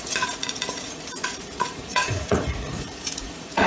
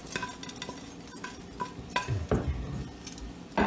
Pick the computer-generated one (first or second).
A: first